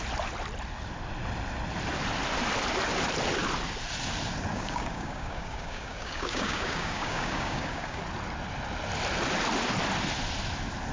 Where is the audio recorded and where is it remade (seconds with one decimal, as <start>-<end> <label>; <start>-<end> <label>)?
0.0-4.5 recorded; 4.5-8.0 remade; 8.0-10.9 recorded